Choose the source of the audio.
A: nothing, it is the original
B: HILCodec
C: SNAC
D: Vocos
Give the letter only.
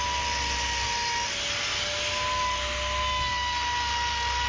A